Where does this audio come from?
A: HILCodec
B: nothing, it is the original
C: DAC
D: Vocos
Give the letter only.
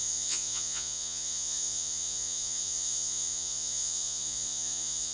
D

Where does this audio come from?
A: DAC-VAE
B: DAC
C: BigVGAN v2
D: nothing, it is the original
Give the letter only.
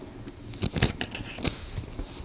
D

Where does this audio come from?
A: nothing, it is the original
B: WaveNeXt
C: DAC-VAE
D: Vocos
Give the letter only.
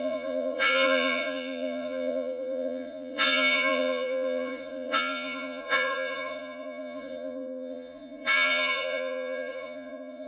D